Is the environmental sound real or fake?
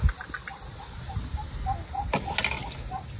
real